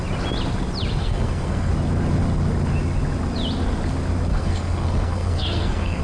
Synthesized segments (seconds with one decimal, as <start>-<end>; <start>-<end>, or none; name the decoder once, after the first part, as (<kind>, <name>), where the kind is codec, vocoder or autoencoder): 1.0-1.7 (codec, SNAC); 4.3-6.0